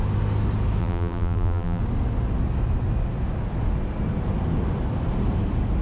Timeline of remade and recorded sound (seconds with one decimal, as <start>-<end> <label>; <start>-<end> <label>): 0.0-0.8 recorded; 0.8-1.8 remade; 1.8-5.8 recorded